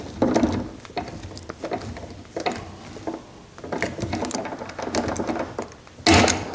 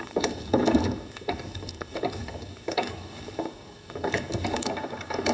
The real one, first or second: first